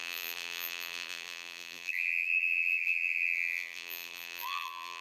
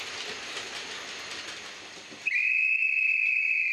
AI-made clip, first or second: first